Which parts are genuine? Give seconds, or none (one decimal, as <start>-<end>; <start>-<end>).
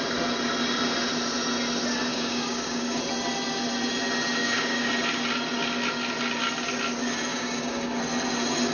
0.0-2.1; 3.0-4.4; 4.9-7.3; 8.0-8.7